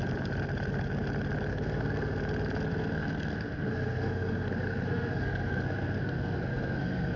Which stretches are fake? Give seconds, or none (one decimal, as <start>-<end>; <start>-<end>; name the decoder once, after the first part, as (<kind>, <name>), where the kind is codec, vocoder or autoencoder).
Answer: 1.5-2.2 (codec, SNAC); 2.7-7.2